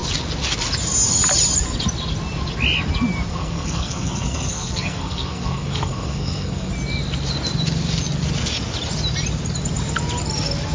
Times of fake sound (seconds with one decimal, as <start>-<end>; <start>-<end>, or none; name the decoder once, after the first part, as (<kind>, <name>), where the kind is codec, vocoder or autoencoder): 3.3-6.7 (codec, SNAC)